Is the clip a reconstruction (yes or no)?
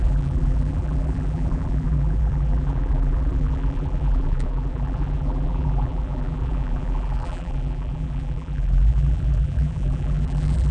yes